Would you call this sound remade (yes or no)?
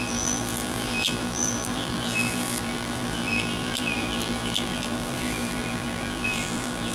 yes